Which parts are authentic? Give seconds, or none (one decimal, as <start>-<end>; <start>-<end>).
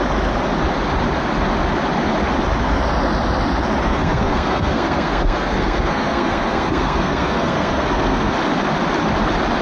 0.0-3.8; 8.3-9.6